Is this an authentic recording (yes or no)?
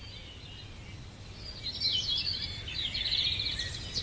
yes